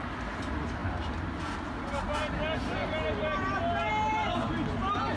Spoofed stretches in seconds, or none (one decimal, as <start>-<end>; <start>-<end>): none